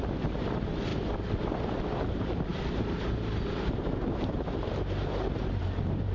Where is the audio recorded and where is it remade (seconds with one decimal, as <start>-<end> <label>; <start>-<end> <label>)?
0.0-0.9 remade; 0.9-2.1 recorded; 2.1-6.1 remade